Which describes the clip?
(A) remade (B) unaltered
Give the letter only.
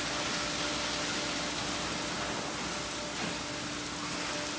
B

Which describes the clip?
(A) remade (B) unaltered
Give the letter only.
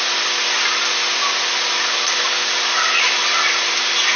B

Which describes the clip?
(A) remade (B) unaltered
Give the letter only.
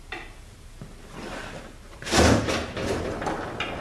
B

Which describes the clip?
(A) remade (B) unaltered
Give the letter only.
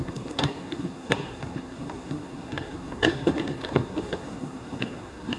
A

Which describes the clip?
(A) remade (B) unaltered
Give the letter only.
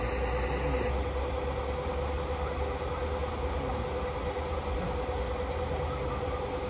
B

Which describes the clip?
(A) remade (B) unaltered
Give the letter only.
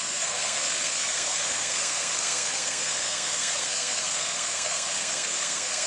A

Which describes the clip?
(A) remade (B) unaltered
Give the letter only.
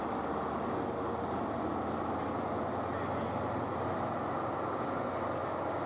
B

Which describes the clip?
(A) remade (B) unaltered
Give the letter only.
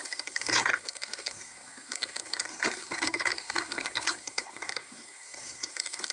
A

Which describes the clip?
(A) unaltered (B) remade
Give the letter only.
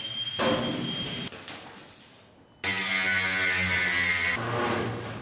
A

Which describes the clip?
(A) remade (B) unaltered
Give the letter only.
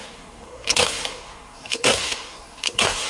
A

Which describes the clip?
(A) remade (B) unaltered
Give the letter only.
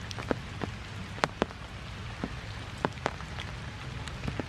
B